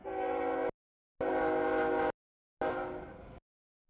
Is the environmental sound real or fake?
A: real